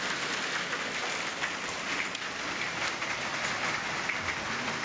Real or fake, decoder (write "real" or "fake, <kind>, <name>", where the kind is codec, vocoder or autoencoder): real